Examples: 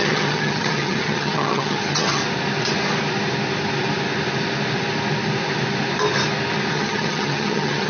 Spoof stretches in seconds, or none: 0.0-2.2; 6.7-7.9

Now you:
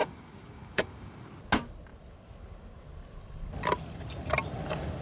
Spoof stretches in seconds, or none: 0.0-1.3

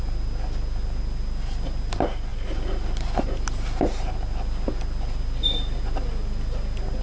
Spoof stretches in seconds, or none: none

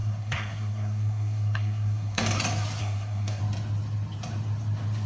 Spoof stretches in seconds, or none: 0.0-2.2; 2.8-3.4

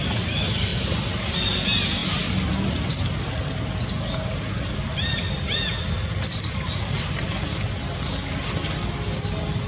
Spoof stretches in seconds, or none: none

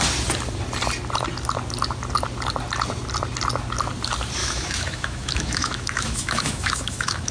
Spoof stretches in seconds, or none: 4.4-7.3